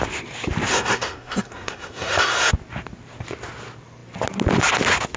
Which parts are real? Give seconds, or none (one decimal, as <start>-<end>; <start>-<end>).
0.0-0.7; 2.5-5.2